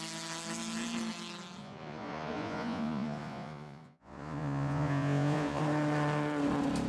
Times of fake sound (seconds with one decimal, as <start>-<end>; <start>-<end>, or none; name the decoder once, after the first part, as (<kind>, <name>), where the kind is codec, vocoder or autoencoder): 1.6-5.6 (vocoder, Vocos)